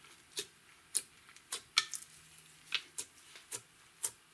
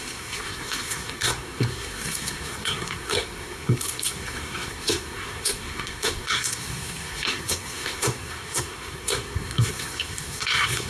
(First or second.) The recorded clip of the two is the first